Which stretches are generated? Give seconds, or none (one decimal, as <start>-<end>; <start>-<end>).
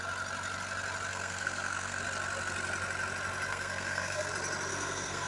1.1-2.0; 3.5-4.3; 4.7-5.3